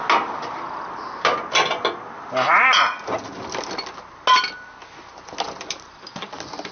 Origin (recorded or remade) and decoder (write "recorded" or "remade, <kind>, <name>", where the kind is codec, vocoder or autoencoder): recorded